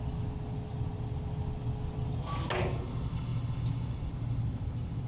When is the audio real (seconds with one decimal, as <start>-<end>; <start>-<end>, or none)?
0.0-5.1